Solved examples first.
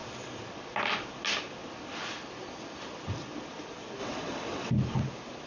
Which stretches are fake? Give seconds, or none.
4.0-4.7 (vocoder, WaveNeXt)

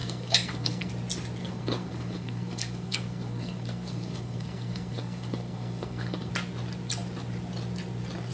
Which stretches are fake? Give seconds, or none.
0.0-0.9 (codec, SNAC); 1.4-6.3